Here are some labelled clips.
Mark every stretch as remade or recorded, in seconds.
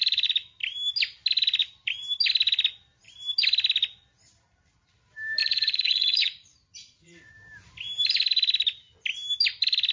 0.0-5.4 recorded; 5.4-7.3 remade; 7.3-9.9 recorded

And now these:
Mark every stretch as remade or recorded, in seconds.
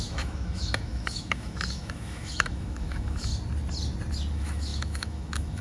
0.0-3.3 remade; 3.3-4.3 recorded; 4.3-5.6 remade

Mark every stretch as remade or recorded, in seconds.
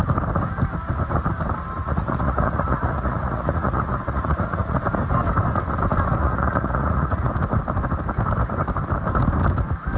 0.0-1.8 recorded; 1.8-4.8 remade; 4.8-6.2 recorded; 6.2-7.3 remade; 7.3-10.0 recorded